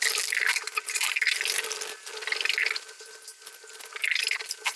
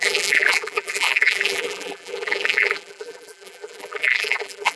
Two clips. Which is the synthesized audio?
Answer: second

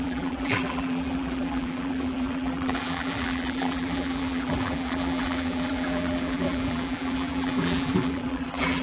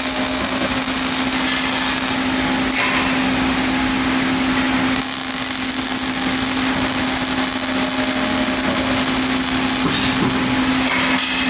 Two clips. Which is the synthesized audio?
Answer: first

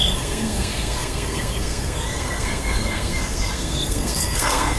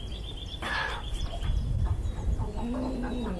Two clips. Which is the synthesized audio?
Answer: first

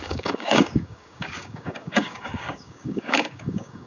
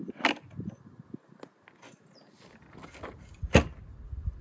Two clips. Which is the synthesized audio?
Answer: first